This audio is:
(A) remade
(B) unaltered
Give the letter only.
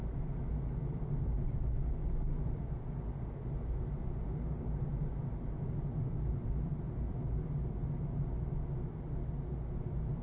B